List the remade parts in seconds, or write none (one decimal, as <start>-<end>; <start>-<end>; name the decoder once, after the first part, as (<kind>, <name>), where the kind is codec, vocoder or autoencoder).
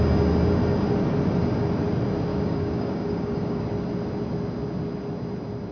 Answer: 2.3-3.6 (codec, DAC)